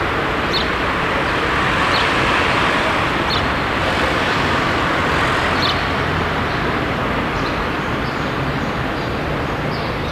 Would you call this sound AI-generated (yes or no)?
yes